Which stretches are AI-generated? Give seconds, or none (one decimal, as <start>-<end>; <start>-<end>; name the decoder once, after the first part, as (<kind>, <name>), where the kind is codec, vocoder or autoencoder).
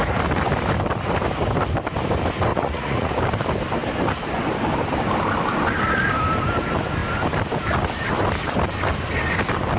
2.5-3.1 (vocoder, Vocos)